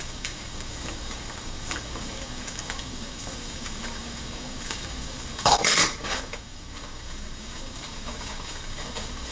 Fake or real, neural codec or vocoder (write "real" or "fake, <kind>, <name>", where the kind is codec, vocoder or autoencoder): fake, codec, DAC